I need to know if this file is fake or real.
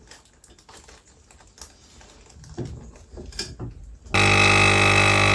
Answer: real